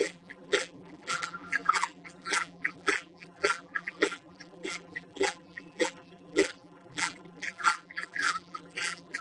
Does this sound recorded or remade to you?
remade